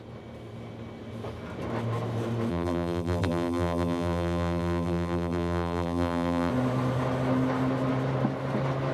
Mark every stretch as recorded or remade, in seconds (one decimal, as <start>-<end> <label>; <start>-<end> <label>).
0.0-2.5 recorded; 2.5-6.5 remade; 6.5-8.9 recorded